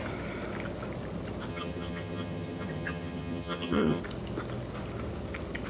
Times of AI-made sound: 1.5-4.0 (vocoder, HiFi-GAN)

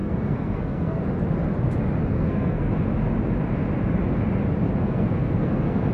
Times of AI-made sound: 0.0-1.0 (codec, SNAC); 2.1-2.7; 4.8-5.9

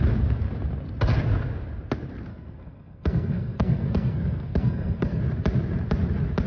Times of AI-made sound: 2.3-5.2 (codec, SNAC)